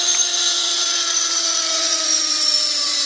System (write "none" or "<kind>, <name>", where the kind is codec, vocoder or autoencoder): vocoder, Vocos